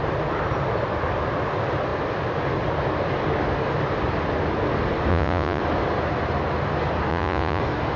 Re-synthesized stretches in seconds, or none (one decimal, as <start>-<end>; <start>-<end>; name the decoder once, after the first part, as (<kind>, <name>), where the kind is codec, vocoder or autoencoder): 5.1-5.6 (vocoder, Vocos); 7.1-7.6